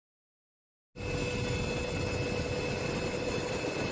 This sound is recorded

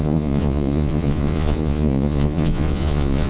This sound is remade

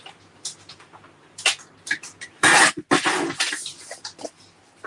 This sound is recorded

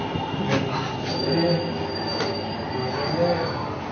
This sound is recorded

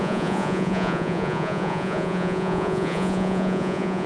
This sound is remade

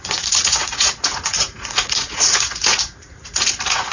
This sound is remade